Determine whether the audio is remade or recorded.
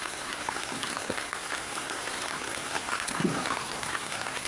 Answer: remade